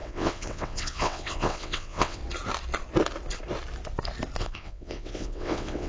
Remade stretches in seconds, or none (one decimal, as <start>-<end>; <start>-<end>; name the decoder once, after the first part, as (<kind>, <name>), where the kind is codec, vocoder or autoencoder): 0.0-2.2 (vocoder, WaveNeXt); 4.4-5.9

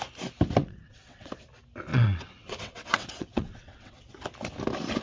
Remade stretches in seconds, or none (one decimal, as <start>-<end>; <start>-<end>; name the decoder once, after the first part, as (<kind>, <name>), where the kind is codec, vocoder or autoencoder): 0.6-1.3 (vocoder, WaveNeXt); 1.9-4.1

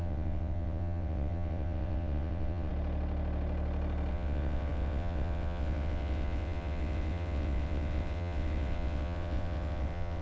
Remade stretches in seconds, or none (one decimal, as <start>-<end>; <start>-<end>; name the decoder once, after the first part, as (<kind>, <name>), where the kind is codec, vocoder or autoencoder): 0.0-2.7 (vocoder, WaveNeXt); 4.1-10.2

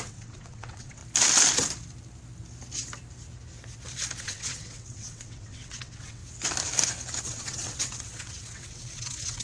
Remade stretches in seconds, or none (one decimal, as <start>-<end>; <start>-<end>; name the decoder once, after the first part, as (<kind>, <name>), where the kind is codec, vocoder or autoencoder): 0.0-1.0 (vocoder, WaveNeXt); 4.2-6.2; 7.2-9.4

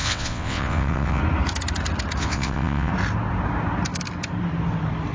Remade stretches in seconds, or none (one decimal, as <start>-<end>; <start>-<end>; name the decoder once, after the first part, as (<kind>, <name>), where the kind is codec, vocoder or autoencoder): 0.0-1.2 (vocoder, WaveNeXt); 2.2-2.9